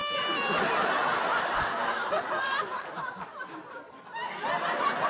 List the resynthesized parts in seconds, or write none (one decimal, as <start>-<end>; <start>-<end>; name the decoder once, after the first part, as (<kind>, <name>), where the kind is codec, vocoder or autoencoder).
none